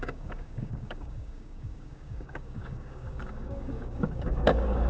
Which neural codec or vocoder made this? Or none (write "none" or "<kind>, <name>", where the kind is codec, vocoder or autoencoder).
codec, DAC